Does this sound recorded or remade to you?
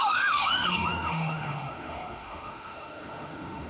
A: remade